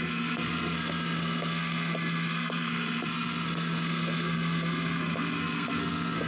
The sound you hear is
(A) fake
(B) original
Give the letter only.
A